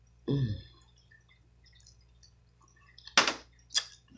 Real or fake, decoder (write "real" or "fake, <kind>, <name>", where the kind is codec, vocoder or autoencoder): real